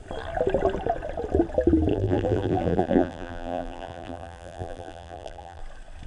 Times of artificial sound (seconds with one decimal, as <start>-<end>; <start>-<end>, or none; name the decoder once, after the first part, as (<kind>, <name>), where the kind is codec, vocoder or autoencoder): 1.9-5.6 (vocoder, BigVGAN v2)